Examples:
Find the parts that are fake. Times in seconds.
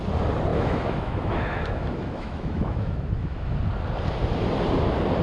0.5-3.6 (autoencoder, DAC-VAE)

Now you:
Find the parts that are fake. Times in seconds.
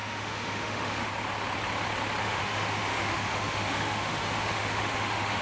0.0-1.1 (autoencoder, DAC-VAE); 2.2-5.4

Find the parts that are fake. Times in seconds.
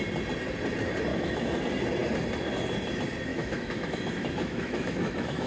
1.1-1.6 (autoencoder, DAC-VAE); 3.3-5.5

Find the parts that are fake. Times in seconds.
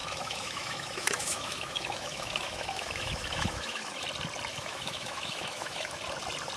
0.0-4.0 (autoencoder, DAC-VAE); 4.5-6.0